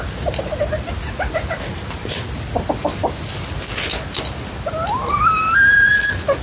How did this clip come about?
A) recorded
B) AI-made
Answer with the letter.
A